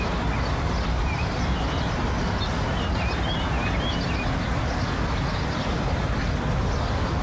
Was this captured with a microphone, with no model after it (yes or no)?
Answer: yes